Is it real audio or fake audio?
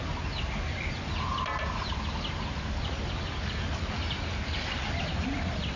real